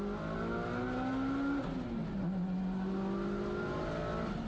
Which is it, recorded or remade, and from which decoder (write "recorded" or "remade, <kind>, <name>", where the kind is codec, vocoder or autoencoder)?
recorded